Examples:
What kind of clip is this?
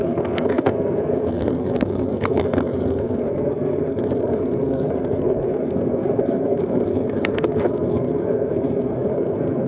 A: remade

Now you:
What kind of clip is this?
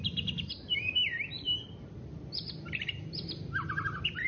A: remade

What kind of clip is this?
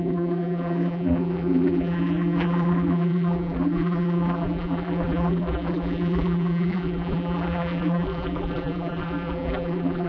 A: remade